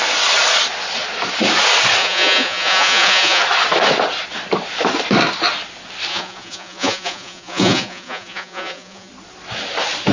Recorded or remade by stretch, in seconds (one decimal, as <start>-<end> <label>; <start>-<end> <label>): 0.0-2.0 recorded; 2.0-3.4 remade; 3.4-6.1 recorded; 6.1-9.1 remade; 9.1-10.1 recorded